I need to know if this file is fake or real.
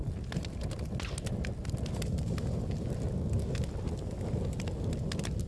real